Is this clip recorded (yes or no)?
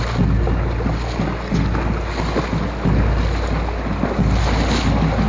yes